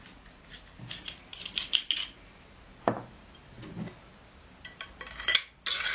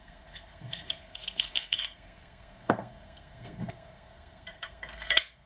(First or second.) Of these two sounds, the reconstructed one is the second